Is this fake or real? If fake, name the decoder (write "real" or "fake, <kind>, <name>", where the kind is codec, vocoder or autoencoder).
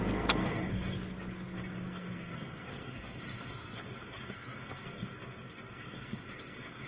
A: fake, codec, SNAC